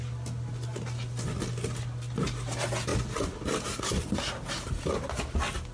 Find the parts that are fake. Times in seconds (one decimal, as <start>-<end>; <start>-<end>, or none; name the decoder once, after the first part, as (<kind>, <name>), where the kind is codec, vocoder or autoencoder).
none